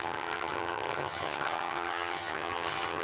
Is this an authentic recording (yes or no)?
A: no